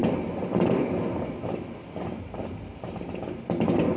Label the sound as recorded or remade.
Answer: recorded